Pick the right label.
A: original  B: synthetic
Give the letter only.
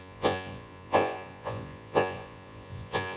B